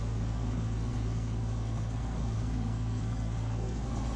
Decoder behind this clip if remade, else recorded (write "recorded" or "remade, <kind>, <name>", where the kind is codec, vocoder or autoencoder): remade, codec, SNAC